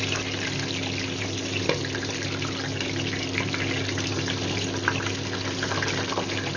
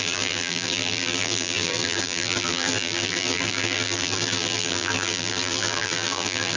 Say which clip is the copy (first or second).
second